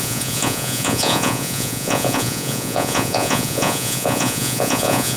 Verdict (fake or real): fake